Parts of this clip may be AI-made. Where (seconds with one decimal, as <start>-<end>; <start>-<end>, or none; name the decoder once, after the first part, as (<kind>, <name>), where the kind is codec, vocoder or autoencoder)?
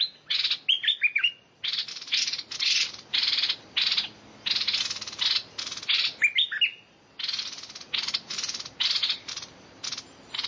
none